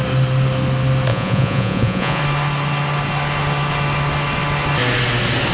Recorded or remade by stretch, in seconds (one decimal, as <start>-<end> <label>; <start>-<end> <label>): 0.0-1.1 recorded; 1.1-2.2 remade; 2.2-5.5 recorded